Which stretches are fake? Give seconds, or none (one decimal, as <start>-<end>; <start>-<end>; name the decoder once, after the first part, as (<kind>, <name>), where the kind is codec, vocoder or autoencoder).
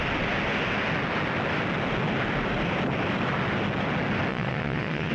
4.3-5.1 (vocoder, Vocos)